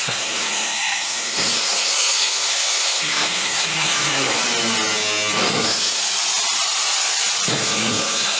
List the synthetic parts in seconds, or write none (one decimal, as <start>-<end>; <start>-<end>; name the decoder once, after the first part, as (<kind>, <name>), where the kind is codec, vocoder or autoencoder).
0.0-4.4 (codec, SNAC); 5.5-6.0; 7.5-8.4